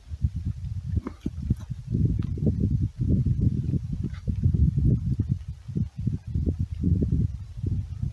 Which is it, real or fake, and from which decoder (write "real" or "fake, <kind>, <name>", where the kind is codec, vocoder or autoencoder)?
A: real